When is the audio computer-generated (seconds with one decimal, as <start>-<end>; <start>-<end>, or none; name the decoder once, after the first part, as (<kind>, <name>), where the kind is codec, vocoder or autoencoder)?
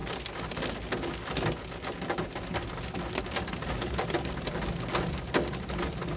none